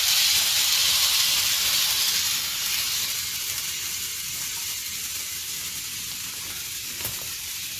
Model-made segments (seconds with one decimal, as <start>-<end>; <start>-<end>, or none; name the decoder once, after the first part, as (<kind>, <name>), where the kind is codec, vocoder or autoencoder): 0.8-1.4 (vocoder, BigVGAN v2)